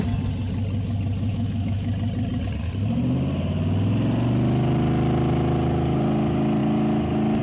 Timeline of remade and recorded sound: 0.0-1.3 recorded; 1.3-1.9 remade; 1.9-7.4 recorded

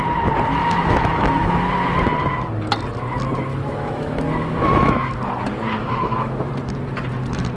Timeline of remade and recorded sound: 0.0-0.6 recorded; 0.6-1.5 remade; 1.5-3.5 recorded; 3.5-5.1 remade; 5.1-5.9 recorded; 5.9-6.5 remade; 6.5-7.6 recorded

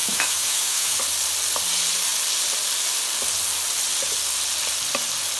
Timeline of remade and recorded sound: 0.0-1.0 remade; 1.0-5.4 recorded

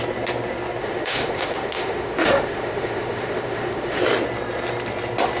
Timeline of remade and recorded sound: 0.0-0.8 recorded; 0.8-4.0 remade; 4.0-5.4 recorded